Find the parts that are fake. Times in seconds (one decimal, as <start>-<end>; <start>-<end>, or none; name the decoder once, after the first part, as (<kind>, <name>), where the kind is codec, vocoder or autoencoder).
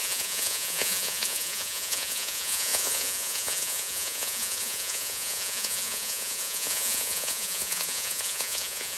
0.0-9.0 (vocoder, Vocos)